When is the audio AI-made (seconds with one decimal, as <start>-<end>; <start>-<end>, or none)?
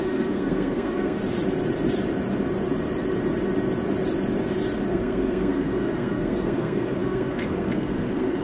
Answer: 0.0-1.2; 4.9-8.4